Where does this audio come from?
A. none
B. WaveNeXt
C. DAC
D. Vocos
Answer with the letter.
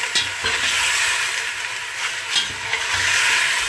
A